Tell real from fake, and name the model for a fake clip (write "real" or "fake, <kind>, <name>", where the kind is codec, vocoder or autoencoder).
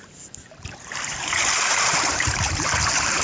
fake, vocoder, BigVGAN v2